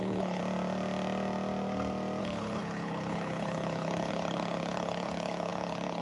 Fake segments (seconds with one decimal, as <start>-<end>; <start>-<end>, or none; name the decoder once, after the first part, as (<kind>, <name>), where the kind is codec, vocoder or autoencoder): 0.0-0.4 (codec, HILCodec); 2.2-6.0